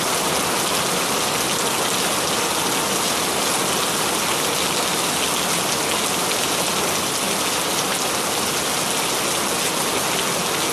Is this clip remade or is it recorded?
recorded